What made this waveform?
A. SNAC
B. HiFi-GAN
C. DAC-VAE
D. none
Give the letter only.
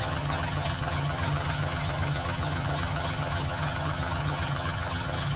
B